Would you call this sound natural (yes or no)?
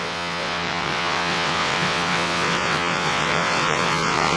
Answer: no